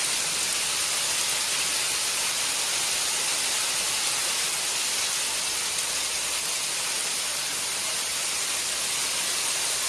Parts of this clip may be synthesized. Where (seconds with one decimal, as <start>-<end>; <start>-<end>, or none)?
none